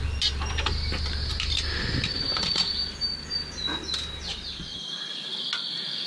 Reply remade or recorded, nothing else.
recorded